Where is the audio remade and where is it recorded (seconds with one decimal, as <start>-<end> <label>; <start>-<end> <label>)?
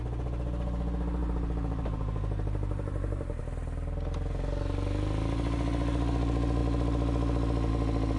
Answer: 0.0-1.2 recorded; 1.2-3.4 remade; 3.4-8.2 recorded